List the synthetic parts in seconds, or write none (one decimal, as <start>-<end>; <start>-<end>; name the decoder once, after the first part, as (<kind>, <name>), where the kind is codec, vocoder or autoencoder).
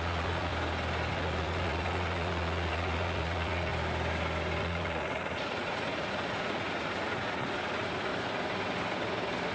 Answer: 0.0-0.5 (vocoder, Vocos); 1.1-3.7; 4.6-8.1